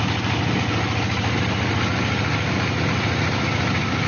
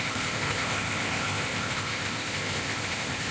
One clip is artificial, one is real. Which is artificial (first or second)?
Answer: second